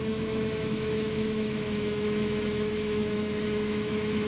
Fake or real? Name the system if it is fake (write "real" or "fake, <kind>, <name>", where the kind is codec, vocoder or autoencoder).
fake, autoencoder, DAC-VAE